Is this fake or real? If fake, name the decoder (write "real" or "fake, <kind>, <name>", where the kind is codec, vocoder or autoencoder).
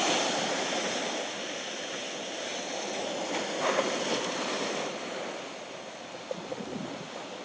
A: real